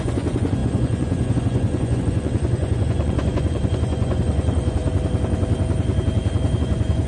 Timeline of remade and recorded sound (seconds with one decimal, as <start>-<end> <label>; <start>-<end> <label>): 0.0-4.8 remade; 4.8-6.6 recorded; 6.6-7.1 remade